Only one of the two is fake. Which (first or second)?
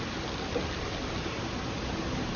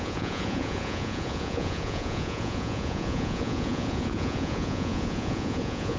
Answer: second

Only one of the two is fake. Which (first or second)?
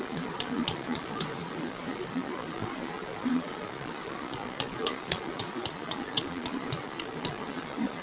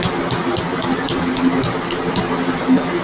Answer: first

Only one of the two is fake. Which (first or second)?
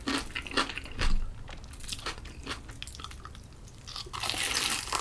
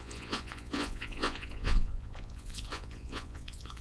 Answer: second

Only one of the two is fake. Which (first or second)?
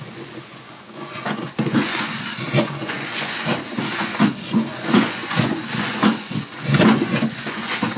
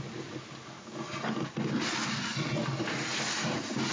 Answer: first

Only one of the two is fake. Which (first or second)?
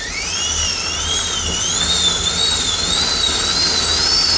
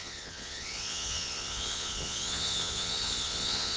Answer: second